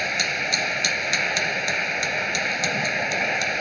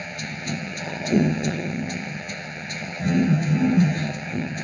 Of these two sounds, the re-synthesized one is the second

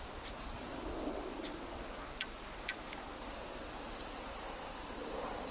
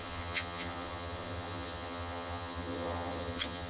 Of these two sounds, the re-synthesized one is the second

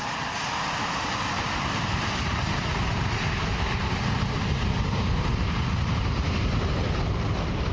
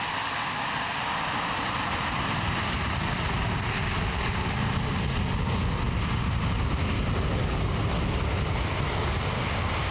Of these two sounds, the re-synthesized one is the first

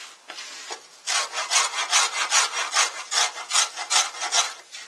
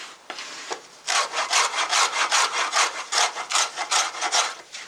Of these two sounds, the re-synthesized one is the second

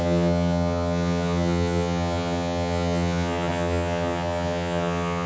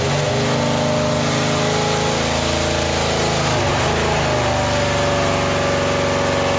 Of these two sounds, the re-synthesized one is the first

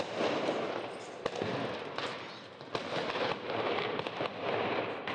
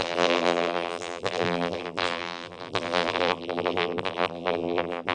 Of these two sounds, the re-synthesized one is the second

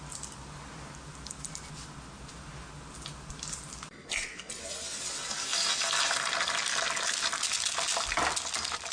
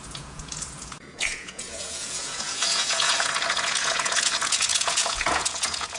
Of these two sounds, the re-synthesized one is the second